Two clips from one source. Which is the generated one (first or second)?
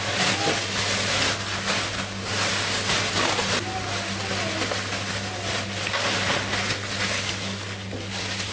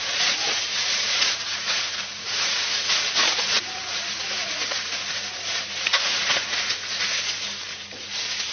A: second